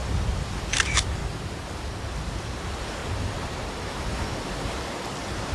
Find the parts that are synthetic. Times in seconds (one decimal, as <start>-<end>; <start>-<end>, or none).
0.0-1.2; 2.1-3.0; 4.7-5.5